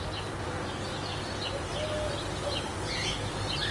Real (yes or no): yes